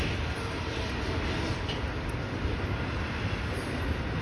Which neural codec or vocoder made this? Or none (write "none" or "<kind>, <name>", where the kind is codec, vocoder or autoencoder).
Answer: none